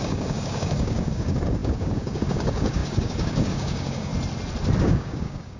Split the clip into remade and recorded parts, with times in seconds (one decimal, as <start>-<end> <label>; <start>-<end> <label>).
0.0-4.1 remade; 4.1-4.8 recorded; 4.8-5.6 remade